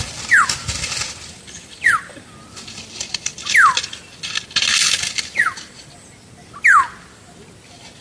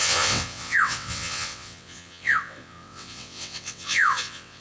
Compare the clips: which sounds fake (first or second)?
second